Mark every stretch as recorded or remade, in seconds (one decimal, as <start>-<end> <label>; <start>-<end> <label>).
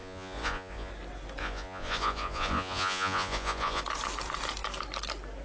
0.0-0.9 remade; 0.9-1.4 recorded; 1.4-3.8 remade; 3.8-5.4 recorded